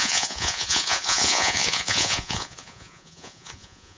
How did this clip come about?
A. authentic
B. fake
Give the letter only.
B